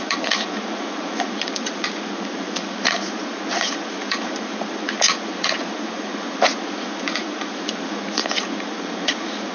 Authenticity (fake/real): fake